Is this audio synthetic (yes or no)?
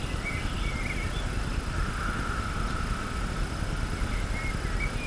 no